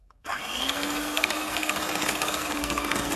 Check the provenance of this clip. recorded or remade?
remade